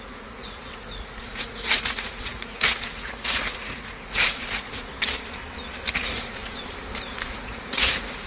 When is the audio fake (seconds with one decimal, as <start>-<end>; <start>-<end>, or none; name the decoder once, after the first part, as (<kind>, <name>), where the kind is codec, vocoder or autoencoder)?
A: 0.0-4.9 (vocoder, Vocos); 5.9-6.4; 7.3-8.3